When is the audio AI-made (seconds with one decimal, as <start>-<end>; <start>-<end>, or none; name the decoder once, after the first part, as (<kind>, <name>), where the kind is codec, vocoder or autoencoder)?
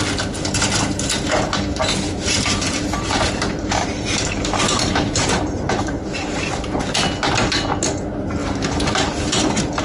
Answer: 1.7-6.6 (vocoder, BigVGAN v2); 8.4-9.2